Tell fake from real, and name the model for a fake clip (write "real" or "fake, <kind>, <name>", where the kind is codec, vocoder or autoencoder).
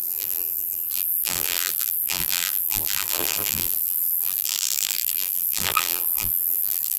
fake, vocoder, BigVGAN v2